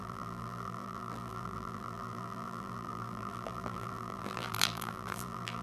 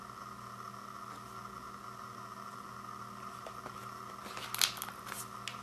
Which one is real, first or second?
second